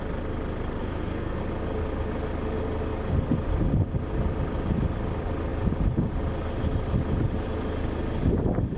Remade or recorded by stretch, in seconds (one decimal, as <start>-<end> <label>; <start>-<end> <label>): 0.0-0.8 recorded; 0.8-1.4 remade; 1.4-8.8 recorded